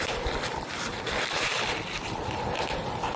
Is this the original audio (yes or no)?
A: no